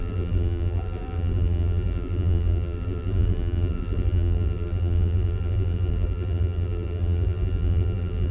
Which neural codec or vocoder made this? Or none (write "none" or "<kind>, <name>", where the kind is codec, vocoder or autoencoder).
vocoder, BigVGAN v2